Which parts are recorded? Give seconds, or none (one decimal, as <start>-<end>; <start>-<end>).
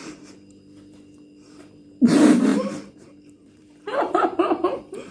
none